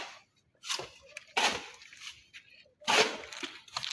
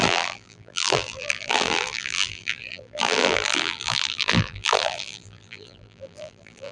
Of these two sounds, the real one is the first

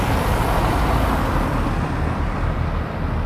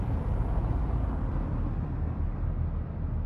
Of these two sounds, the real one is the second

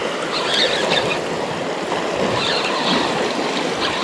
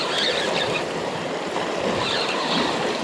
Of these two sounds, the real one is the first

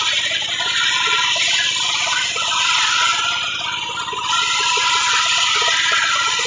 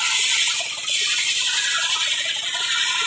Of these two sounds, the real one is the second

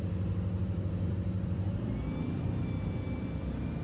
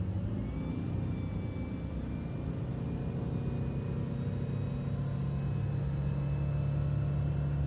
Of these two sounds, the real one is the second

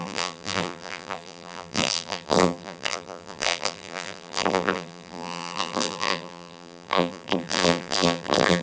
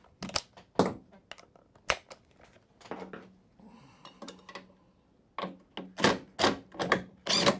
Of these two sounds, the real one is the second